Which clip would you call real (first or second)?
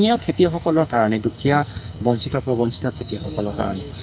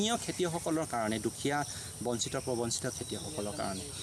second